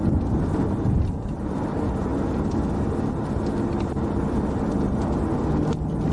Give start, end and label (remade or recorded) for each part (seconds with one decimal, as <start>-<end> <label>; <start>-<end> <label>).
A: 0.0-6.1 recorded